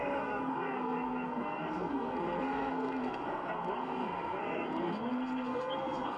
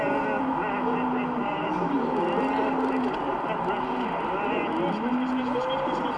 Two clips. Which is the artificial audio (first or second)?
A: first